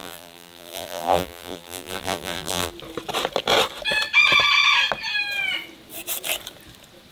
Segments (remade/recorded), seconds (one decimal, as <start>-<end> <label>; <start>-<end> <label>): 0.0-2.7 remade; 2.7-7.1 recorded